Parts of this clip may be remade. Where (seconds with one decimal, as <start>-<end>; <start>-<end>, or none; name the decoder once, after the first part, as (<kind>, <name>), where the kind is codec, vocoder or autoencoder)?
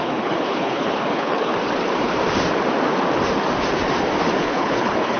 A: 0.0-1.5 (codec, HILCodec); 4.4-5.2